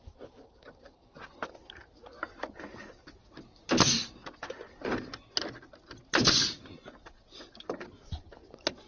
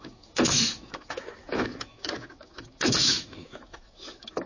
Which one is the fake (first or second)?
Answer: second